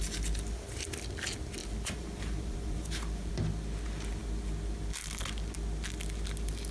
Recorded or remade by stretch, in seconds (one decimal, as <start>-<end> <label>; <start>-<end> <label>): 0.0-1.6 recorded; 1.6-3.3 remade; 3.3-6.7 recorded